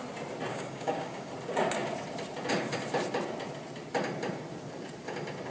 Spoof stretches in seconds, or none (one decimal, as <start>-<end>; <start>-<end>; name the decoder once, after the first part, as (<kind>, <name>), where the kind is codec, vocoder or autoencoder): 0.5-1.3 (codec, DAC)